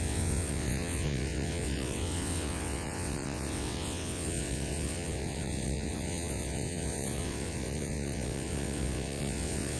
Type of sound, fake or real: fake